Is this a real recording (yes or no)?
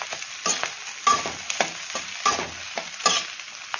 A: yes